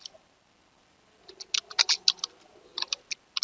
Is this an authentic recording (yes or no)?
yes